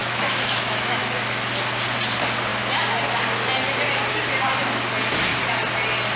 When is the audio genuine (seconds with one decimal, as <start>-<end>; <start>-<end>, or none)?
1.0-6.2